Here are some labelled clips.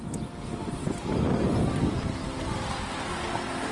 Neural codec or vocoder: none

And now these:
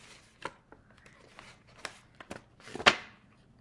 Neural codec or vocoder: none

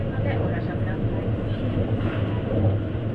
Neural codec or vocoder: none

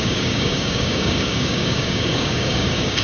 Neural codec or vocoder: codec, DAC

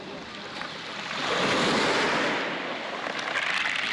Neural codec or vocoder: none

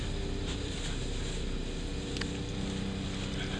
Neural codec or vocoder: none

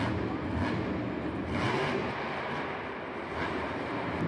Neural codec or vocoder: none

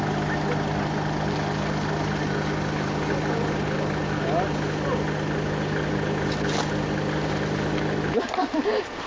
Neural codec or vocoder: none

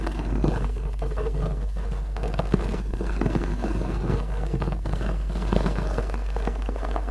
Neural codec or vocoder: codec, SNAC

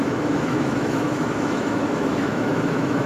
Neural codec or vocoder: autoencoder, DAC-VAE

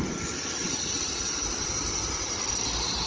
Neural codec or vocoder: none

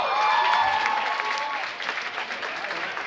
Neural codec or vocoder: none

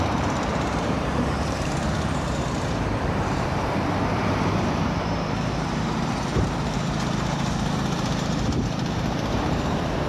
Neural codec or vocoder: vocoder, BigVGAN v2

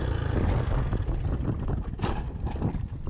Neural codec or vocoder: none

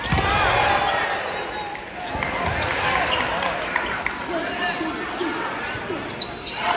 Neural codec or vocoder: none